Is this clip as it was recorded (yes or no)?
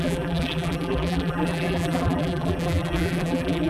no